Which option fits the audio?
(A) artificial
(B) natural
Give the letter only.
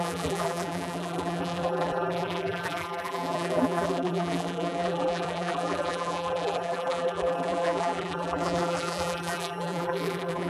A